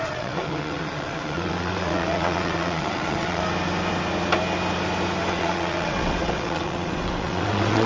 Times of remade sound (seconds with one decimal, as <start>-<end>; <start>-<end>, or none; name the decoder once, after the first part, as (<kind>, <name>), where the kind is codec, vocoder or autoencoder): 0.0-3.4 (vocoder, WaveNeXt); 5.3-7.9